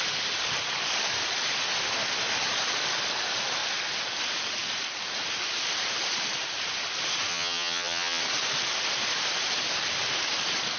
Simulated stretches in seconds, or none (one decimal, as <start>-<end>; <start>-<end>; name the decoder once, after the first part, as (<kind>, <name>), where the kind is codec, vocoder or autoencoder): 7.3-8.2 (vocoder, HiFi-GAN)